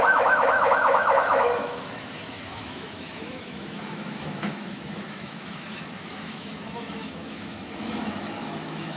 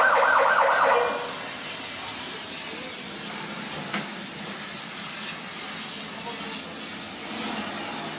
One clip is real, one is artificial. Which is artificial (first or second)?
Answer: first